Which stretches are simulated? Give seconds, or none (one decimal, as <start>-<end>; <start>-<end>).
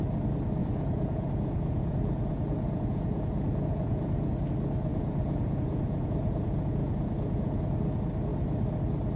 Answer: 0.6-4.3; 4.9-7.6